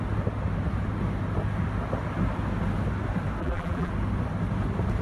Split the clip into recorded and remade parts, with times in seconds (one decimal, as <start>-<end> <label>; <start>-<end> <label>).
0.0-3.4 recorded; 3.4-3.9 remade; 3.9-5.0 recorded